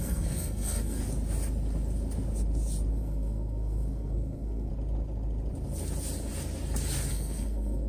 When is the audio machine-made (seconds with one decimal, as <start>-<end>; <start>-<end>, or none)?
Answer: 0.0-1.0; 2.9-4.7; 7.1-7.9